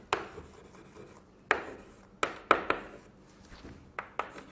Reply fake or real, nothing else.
real